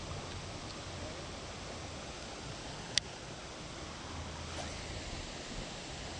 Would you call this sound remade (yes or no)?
no